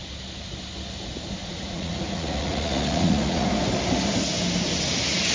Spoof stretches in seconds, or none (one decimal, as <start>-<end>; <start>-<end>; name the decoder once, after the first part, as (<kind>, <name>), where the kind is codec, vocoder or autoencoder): 1.4-3.5 (vocoder, Vocos)